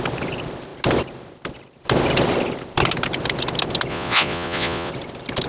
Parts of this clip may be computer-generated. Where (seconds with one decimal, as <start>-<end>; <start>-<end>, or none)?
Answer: 3.9-4.9